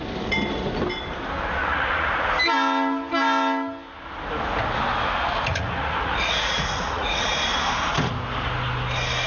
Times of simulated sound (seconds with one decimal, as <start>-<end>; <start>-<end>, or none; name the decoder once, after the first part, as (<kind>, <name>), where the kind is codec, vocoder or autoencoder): 1.6-2.2 (vocoder, Vocos); 5.5-7.3